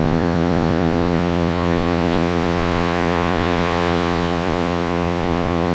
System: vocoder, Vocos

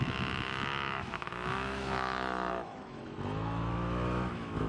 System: autoencoder, DAC-VAE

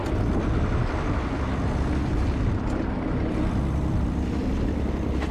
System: none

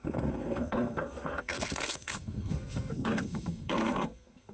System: codec, SNAC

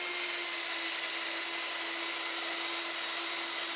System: none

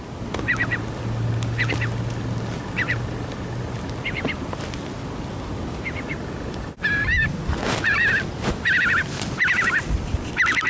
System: none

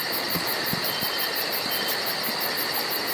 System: none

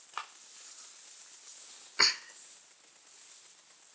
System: none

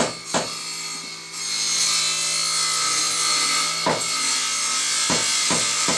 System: none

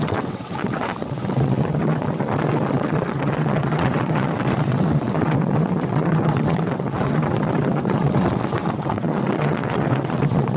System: vocoder, WaveNeXt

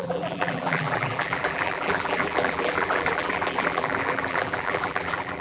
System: vocoder, BigVGAN v2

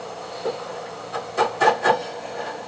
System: none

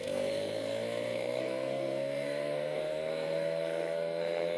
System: codec, SNAC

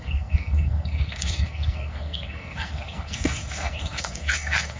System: codec, SNAC